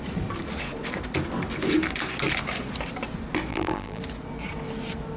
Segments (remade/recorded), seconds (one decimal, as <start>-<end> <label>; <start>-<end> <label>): 0.0-3.5 recorded; 3.5-4.0 remade; 4.0-5.2 recorded